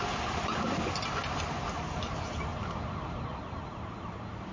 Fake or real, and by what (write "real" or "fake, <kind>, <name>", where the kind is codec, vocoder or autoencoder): real